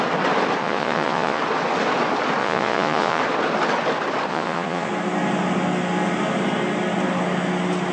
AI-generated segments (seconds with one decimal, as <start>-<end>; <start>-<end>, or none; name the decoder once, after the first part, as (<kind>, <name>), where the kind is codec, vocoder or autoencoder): 0.6-1.4 (vocoder, Vocos); 2.4-3.2; 4.3-4.9